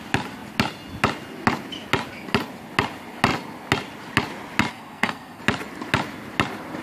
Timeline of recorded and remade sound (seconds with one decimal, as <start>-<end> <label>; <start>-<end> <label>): 0.0-4.7 recorded; 4.7-5.4 remade; 5.4-6.8 recorded